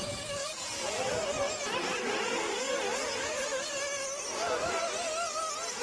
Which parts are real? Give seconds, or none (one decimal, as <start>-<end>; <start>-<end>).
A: 0.0-0.4; 1.1-5.8